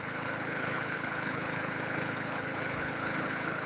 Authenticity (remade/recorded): remade